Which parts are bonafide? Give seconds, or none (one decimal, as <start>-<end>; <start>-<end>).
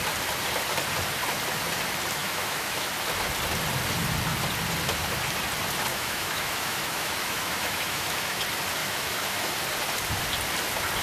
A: 0.0-2.2; 2.9-5.9; 8.4-8.8; 9.5-11.0